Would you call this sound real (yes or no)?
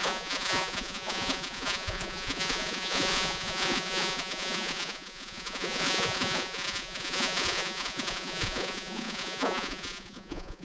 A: no